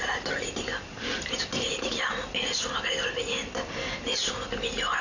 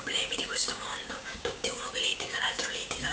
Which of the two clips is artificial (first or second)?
second